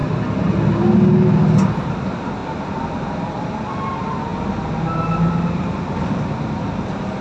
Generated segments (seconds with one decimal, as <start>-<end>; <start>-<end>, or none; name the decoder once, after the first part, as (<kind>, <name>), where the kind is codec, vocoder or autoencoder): none

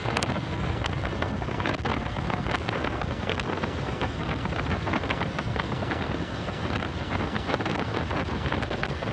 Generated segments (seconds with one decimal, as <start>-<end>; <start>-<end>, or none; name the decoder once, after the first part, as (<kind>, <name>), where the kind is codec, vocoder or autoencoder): 0.0-9.1 (codec, SNAC)

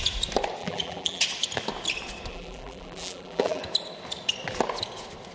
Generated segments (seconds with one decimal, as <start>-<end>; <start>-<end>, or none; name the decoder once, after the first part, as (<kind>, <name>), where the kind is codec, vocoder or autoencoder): 0.6-1.2 (vocoder, BigVGAN v2); 2.3-3.6

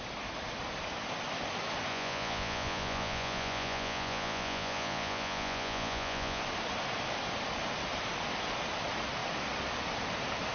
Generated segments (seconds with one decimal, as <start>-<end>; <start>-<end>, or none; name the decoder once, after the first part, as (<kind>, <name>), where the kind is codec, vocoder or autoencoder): 1.9-6.4 (vocoder, Vocos)

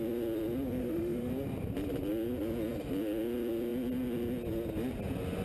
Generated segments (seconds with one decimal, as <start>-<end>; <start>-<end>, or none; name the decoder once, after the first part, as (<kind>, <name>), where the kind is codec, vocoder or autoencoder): 0.8-1.3 (autoencoder, DAC-VAE)

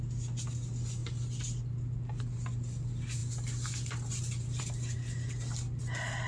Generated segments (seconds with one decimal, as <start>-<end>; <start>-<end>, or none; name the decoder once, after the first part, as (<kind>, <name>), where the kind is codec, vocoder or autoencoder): 1.0-1.5 (vocoder, BigVGAN v2)

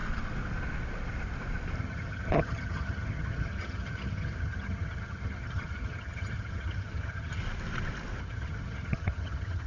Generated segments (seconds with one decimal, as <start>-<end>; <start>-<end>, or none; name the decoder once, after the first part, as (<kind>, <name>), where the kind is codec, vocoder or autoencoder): 1.8-7.4 (vocoder, HiFi-GAN); 8.2-9.7

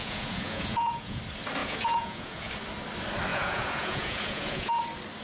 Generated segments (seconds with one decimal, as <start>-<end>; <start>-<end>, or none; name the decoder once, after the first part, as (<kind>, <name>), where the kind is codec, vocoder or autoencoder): 0.0-1.2 (vocoder, Vocos); 1.6-2.5; 3.3-4.8